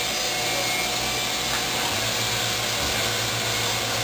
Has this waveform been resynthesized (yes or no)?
no